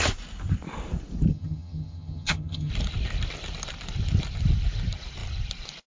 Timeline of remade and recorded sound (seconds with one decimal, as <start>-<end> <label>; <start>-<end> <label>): 0.0-1.3 recorded; 1.3-2.7 remade; 2.7-5.9 recorded

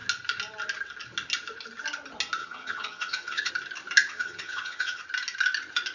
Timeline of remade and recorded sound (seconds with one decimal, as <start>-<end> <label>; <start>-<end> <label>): 0.0-2.4 recorded; 2.4-3.5 remade; 3.5-4.1 recorded; 4.1-5.0 remade; 5.0-5.9 recorded